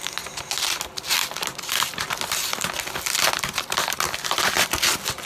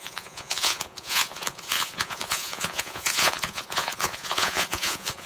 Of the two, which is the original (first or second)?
first